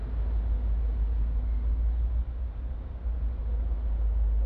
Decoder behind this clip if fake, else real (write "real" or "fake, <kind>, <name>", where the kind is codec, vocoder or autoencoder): real